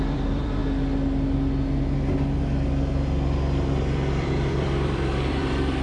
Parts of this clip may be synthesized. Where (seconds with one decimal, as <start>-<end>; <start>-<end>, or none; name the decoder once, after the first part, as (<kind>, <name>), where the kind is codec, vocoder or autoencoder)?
0.0-0.6 (vocoder, BigVGAN v2); 4.1-5.8